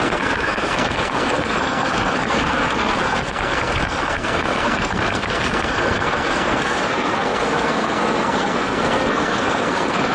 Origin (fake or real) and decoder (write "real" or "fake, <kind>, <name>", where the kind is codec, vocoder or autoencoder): fake, codec, SNAC